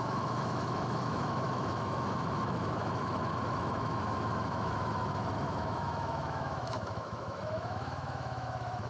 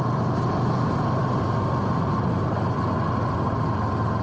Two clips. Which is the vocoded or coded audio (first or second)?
first